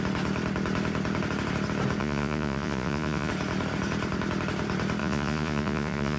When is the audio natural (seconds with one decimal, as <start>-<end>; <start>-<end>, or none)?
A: 0.0-2.0; 3.3-5.0